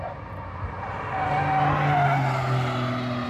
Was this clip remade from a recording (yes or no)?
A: no